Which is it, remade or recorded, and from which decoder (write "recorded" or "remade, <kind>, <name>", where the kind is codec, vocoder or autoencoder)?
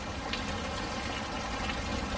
recorded